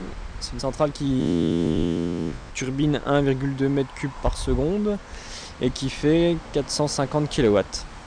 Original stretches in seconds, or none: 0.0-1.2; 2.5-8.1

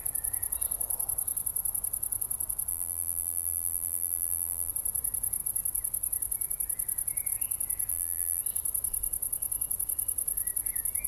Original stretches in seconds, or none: 0.0-2.7; 4.7-7.9; 8.4-11.1

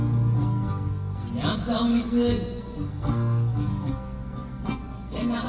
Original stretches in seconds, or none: 0.0-0.4; 1.3-1.9